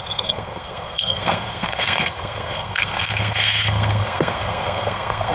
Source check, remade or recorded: remade